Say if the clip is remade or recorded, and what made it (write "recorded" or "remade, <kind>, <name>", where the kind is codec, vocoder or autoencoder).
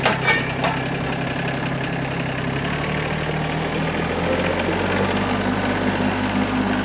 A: recorded